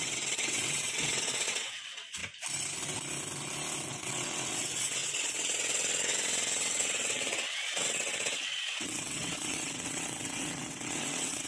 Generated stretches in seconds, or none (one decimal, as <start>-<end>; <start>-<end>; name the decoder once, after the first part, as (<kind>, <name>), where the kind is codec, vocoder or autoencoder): 0.0-2.2 (vocoder, WaveNeXt); 3.9-11.5